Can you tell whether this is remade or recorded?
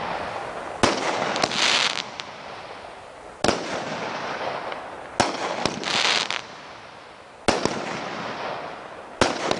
recorded